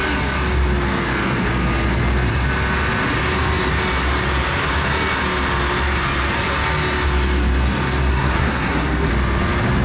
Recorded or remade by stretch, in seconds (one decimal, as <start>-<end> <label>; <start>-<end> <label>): 0.0-8.1 recorded; 8.1-9.1 remade; 9.1-9.8 recorded